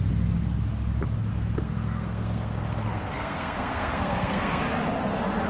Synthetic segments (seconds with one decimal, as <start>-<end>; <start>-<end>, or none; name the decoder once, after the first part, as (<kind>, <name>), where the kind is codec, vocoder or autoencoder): 1.3-4.6 (codec, SNAC)